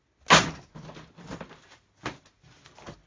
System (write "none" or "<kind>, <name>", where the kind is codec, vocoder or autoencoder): none